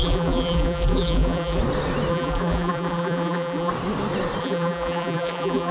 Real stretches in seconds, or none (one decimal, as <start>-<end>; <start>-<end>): 1.6-2.1; 3.7-4.4